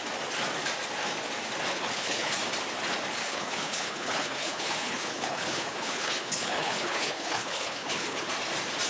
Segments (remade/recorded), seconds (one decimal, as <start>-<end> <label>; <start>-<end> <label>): 0.0-1.7 recorded; 1.7-2.4 remade; 2.4-3.2 recorded; 3.2-8.3 remade; 8.3-8.9 recorded